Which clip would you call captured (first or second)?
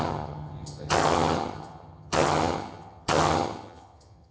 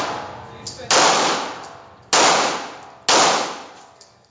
second